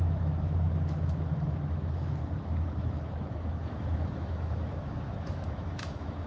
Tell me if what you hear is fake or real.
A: fake